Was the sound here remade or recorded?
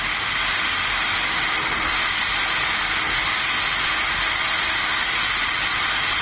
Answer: recorded